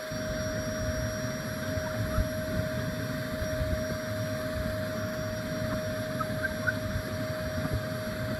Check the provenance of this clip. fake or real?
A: real